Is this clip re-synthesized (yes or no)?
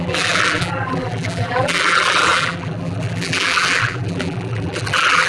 yes